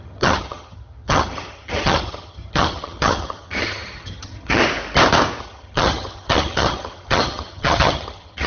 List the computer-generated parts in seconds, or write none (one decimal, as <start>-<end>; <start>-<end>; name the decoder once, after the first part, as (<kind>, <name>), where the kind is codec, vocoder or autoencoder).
0.0-4.6 (vocoder, HiFi-GAN); 5.4-8.5